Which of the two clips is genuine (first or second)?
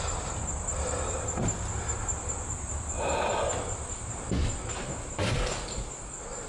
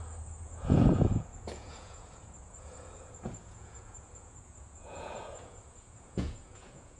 first